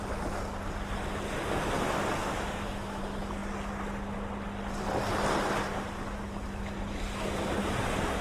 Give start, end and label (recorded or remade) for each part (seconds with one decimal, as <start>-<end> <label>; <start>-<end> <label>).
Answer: 0.0-2.2 recorded; 2.2-3.0 remade; 3.0-8.2 recorded